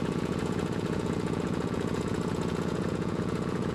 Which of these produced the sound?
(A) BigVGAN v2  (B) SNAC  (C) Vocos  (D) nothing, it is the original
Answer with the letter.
C